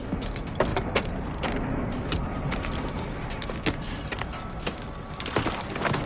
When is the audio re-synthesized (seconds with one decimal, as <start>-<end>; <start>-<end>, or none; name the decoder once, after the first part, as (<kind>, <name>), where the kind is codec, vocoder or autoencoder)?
0.7-2.4 (vocoder, BigVGAN v2)